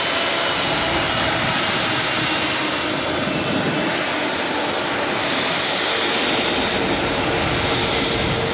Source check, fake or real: real